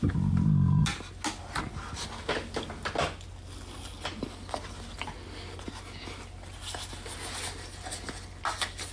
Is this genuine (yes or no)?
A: yes